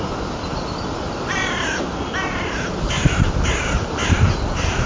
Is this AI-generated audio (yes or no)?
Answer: no